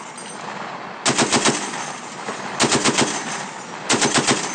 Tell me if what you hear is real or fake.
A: real